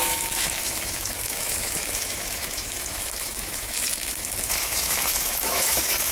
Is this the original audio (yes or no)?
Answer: no